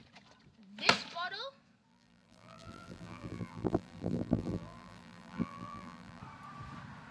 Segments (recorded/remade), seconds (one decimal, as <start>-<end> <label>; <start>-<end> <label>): 0.0-1.9 recorded; 1.9-6.2 remade; 6.2-7.1 recorded